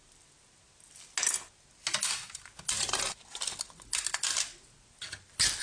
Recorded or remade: recorded